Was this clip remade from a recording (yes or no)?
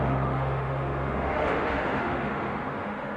yes